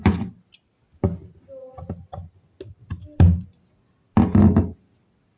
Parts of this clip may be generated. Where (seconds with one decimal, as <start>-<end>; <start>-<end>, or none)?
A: none